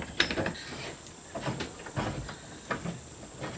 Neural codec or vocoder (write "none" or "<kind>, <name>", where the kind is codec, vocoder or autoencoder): none